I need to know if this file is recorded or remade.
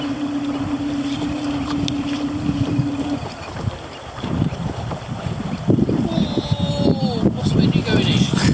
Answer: recorded